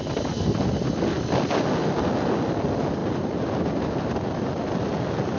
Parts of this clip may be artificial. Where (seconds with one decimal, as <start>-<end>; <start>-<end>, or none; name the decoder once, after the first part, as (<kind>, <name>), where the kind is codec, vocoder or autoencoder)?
none